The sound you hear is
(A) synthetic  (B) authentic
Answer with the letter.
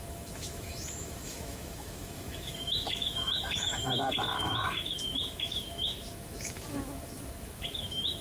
A